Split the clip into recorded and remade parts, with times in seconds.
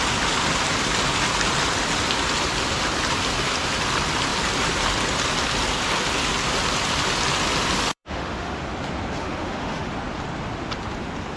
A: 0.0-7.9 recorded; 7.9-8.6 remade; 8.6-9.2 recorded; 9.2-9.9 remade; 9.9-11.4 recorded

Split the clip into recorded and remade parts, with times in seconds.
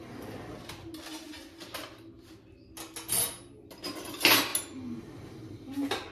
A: 0.0-6.1 recorded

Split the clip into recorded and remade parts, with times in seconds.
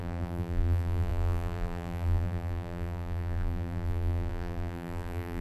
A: 0.0-5.4 remade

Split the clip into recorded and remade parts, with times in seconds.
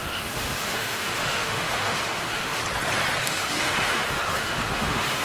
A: 0.0-2.6 remade; 2.6-3.2 recorded; 3.2-5.2 remade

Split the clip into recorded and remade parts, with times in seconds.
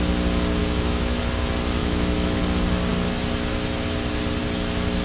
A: 0.0-0.6 recorded; 0.6-1.2 remade; 1.2-1.8 recorded; 1.8-2.4 remade; 2.4-5.0 recorded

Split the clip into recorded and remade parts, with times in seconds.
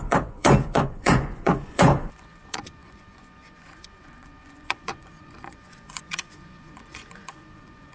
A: 0.0-7.9 remade